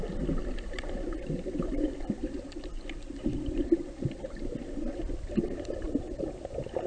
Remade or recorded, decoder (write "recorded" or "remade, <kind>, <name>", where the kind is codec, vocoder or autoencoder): recorded